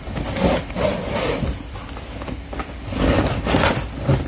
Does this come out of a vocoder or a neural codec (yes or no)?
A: no